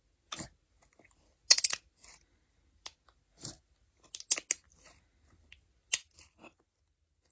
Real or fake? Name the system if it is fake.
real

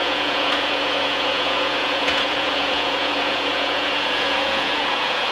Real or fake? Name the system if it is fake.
fake, vocoder, Vocos